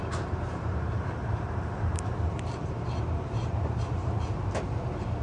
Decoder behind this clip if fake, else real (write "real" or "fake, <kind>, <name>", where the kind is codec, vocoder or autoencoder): fake, vocoder, BigVGAN v2